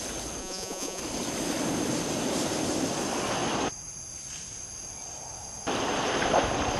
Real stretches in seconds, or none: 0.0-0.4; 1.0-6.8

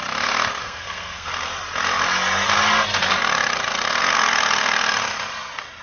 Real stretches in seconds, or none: 0.0-0.6; 1.3-5.8

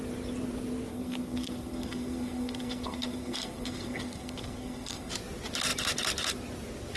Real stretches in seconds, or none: 0.0-0.9; 5.1-7.0

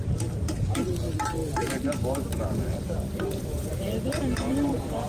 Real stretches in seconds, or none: none

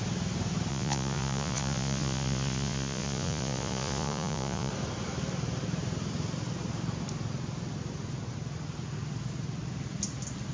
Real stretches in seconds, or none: 0.0-0.7; 4.7-10.5

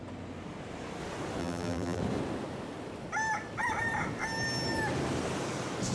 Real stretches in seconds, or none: 0.0-1.4; 2.0-5.9